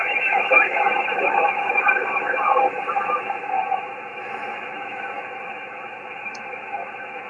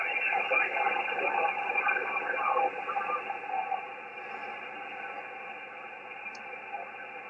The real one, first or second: second